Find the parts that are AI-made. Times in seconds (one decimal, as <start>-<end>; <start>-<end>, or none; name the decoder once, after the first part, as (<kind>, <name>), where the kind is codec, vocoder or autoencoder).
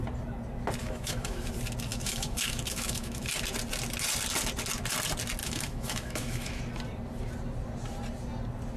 0.8-1.5 (autoencoder, DAC-VAE); 1.9-3.3; 5.4-6.6